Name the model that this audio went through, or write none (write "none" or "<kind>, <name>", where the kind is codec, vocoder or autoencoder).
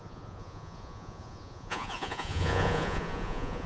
vocoder, Vocos